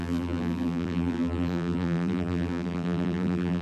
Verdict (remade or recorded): remade